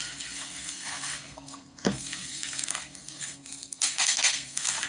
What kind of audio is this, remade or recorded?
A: remade